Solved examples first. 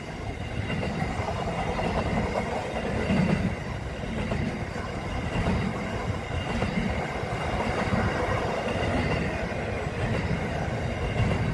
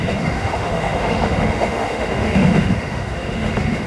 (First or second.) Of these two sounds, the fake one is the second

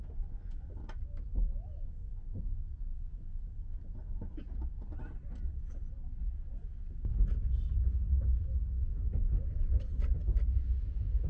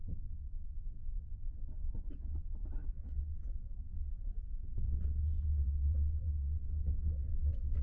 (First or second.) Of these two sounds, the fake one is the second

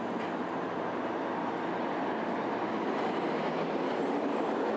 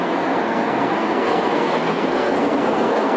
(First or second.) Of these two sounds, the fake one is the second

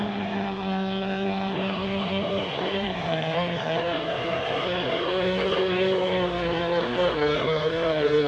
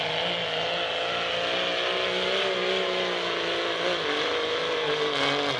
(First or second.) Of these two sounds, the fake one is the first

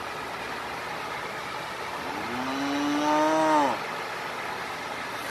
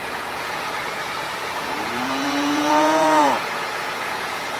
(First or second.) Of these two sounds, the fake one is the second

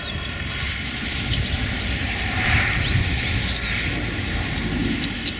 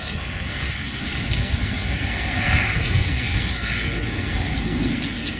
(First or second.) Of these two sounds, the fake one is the second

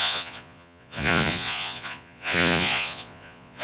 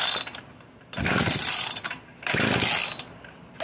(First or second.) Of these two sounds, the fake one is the first